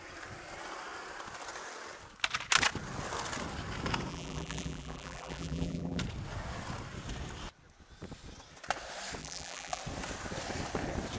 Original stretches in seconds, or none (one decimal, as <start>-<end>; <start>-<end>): 0.0-4.1; 6.0-9.2; 9.8-11.2